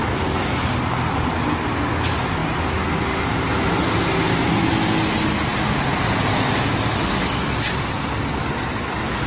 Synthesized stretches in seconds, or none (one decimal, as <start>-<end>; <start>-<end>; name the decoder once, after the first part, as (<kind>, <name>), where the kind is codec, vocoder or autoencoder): none